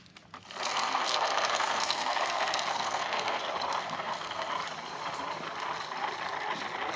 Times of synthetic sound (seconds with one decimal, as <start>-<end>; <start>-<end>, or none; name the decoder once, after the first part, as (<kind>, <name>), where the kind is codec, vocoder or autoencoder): 0.7-3.4 (codec, SNAC); 3.8-4.5